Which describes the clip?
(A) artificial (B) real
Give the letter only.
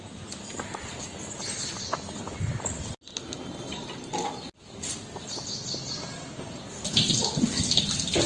B